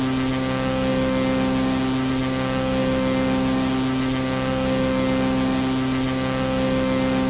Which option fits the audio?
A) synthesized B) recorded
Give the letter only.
B